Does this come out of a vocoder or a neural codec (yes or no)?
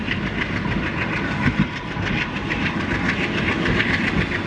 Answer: no